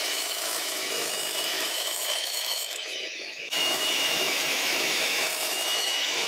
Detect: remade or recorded remade